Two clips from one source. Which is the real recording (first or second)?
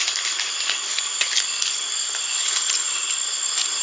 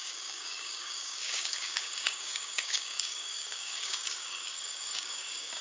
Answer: first